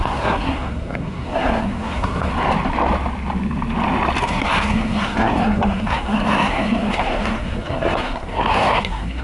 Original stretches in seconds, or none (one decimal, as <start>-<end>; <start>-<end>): 2.3-4.2